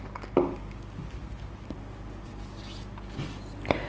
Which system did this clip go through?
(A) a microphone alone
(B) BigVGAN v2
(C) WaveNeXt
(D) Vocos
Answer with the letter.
A